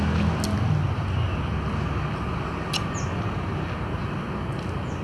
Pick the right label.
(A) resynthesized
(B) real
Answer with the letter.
B